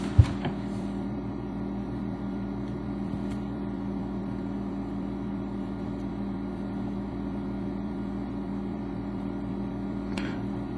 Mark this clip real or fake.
fake